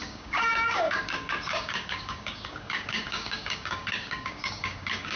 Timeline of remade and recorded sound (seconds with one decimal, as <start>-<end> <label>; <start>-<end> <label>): 0.0-5.2 remade